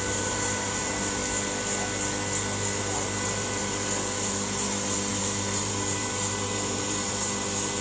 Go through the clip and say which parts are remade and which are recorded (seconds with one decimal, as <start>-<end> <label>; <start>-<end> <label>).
0.0-1.2 remade; 1.2-2.8 recorded; 2.8-7.8 remade